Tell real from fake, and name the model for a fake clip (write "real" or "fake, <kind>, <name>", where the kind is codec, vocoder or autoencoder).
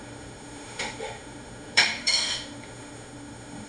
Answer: fake, autoencoder, DAC-VAE